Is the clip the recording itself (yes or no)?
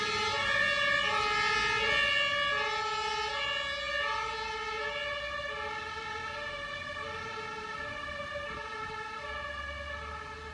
yes